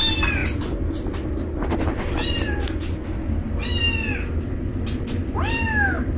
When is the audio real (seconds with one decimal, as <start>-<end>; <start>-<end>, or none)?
0.0-6.2